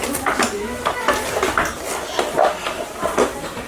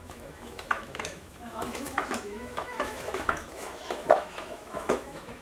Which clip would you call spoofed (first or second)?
second